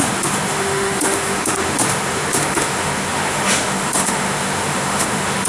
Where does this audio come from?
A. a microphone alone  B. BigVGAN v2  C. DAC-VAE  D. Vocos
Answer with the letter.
C